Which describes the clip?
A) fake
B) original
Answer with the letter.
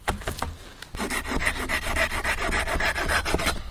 B